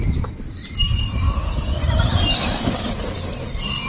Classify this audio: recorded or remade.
recorded